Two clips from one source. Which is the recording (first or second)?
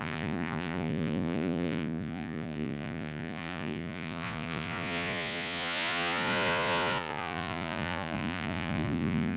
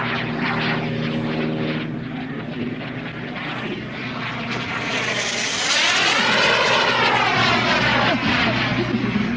second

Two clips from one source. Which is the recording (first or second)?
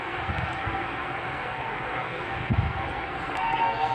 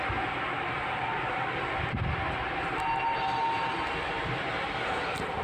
second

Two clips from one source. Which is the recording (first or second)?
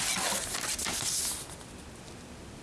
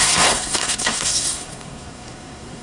first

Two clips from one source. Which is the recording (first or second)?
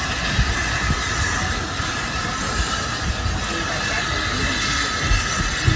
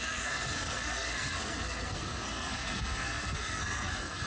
first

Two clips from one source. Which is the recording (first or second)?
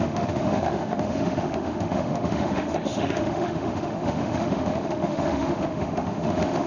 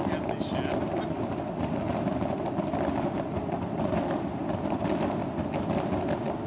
second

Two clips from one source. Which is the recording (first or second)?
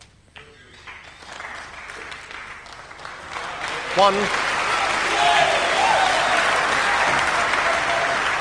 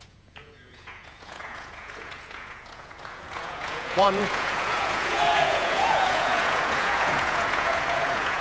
first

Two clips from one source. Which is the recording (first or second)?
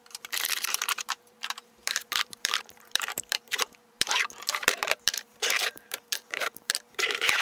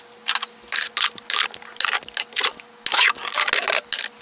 second